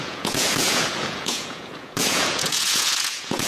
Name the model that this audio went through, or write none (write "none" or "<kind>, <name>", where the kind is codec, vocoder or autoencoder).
vocoder, Vocos